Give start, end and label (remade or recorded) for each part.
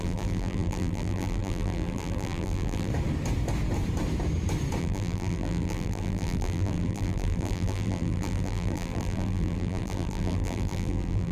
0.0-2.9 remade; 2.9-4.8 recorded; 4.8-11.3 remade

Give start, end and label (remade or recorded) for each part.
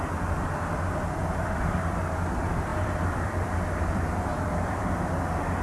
0.0-1.2 recorded; 1.2-1.7 remade; 1.7-2.7 recorded; 2.7-5.1 remade; 5.1-5.6 recorded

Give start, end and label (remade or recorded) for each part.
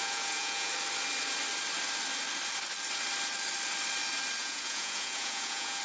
0.0-0.7 remade; 0.7-4.4 recorded; 4.4-5.8 remade